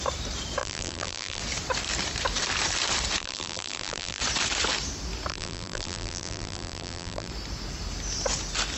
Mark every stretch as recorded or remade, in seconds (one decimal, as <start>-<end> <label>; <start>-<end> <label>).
0.0-0.6 recorded; 0.6-1.4 remade; 1.4-3.2 recorded; 3.2-4.2 remade; 4.2-5.3 recorded; 5.3-7.3 remade; 7.3-8.8 recorded